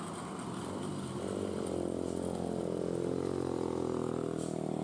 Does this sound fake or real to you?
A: real